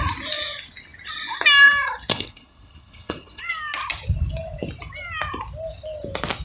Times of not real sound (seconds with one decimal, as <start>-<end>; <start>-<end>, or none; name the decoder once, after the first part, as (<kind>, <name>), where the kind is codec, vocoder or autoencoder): 2.1-3.4 (codec, HILCodec)